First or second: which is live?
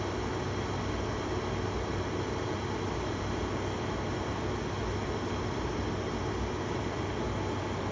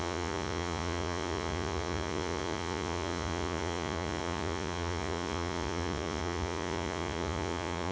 first